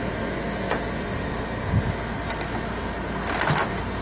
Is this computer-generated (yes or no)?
no